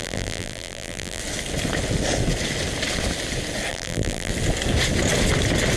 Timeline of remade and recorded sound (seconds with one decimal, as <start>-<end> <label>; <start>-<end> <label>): 0.0-1.2 remade; 1.2-3.7 recorded; 3.7-4.3 remade; 4.3-5.8 recorded